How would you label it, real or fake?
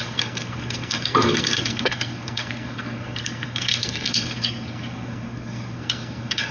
fake